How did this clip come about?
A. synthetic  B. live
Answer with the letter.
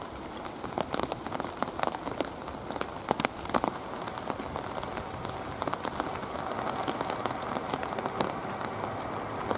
B